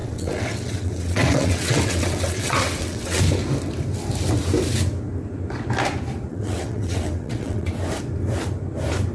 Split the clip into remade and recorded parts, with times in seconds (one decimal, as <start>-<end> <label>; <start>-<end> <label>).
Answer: 0.0-3.2 remade; 3.2-6.3 recorded; 6.3-7.7 remade; 7.7-9.1 recorded